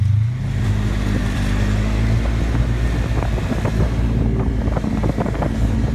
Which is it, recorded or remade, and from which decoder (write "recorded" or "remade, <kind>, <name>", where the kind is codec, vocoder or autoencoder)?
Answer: recorded